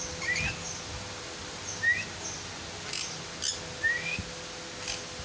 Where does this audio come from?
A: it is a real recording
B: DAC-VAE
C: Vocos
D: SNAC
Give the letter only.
A